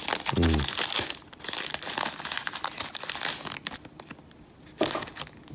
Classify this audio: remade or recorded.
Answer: recorded